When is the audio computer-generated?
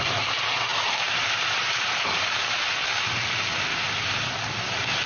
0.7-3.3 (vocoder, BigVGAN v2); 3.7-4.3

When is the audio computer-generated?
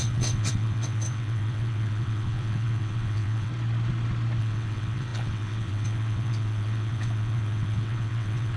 0.0-3.5 (vocoder, WaveNeXt); 4.4-8.6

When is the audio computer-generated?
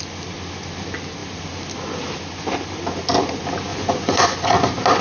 3.7-4.5 (vocoder, Vocos)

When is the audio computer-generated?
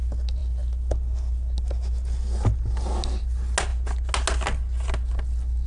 none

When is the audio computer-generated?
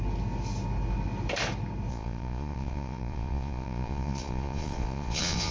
1.9-5.5 (vocoder, Vocos)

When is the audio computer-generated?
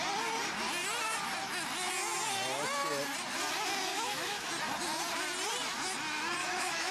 3.9-4.5 (autoencoder, DAC-VAE); 6.4-6.9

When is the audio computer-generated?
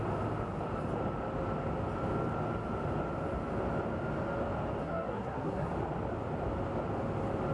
4.8-5.7 (codec, SNAC)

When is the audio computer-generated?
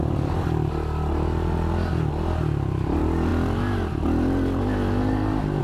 none